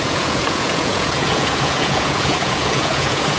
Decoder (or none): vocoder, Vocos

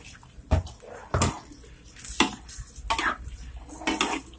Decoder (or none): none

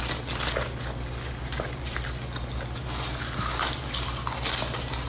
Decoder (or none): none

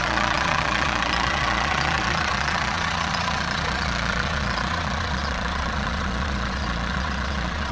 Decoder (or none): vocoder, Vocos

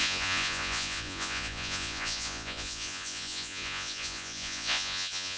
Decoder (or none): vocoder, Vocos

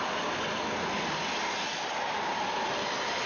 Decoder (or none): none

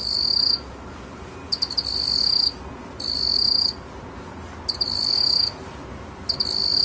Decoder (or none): none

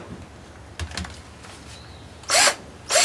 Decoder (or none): none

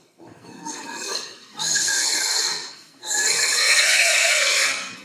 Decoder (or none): codec, SNAC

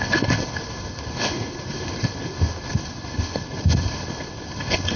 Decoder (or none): codec, HILCodec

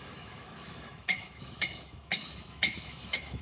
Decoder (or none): autoencoder, DAC-VAE